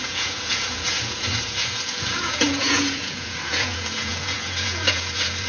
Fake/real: fake